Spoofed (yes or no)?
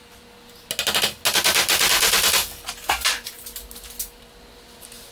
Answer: no